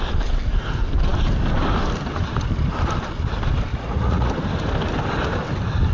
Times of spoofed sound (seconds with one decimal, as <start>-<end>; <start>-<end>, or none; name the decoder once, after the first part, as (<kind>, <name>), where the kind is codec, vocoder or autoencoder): 3.7-4.3 (vocoder, Vocos)